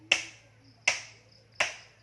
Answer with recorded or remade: recorded